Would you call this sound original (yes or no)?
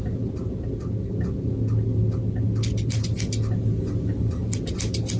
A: yes